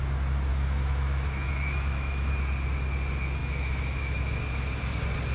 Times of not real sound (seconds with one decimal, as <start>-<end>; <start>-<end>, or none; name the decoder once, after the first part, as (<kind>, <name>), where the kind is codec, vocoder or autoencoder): 0.5-2.3 (autoencoder, DAC-VAE); 3.4-4.4